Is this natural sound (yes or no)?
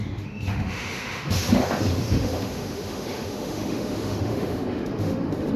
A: no